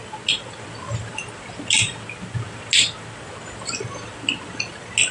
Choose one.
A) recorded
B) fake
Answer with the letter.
A